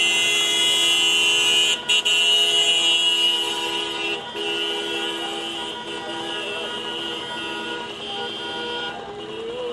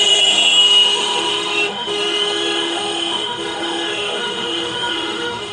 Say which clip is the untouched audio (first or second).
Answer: first